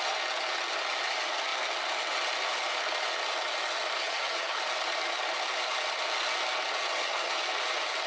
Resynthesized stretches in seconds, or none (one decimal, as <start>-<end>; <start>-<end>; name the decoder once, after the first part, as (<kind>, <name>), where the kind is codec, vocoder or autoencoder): 4.0-4.6 (vocoder, HiFi-GAN); 6.8-7.4